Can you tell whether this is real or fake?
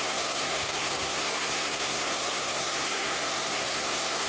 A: fake